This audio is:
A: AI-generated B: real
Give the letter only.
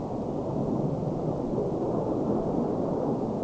A